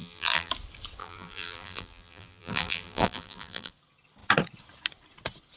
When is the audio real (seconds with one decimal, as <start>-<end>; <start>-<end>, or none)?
0.5-1.0; 3.7-5.6